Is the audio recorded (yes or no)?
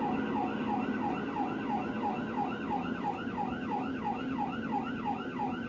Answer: yes